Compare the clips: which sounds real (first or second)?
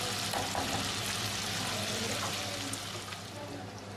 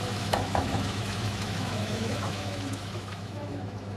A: first